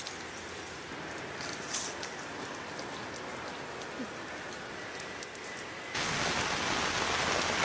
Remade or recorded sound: recorded